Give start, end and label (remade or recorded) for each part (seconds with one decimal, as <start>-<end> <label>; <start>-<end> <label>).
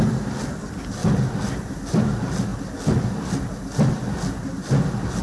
0.0-5.2 recorded